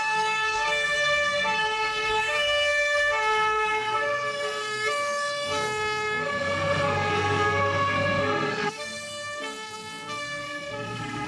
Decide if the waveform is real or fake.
fake